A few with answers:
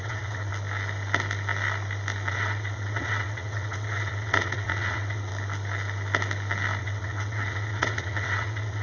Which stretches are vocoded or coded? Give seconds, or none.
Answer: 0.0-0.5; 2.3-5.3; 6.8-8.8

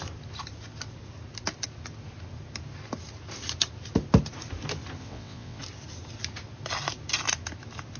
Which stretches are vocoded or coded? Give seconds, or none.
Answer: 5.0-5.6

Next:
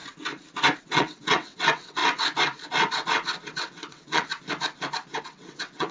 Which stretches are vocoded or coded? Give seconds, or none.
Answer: 0.8-2.0; 3.5-4.3; 5.2-5.9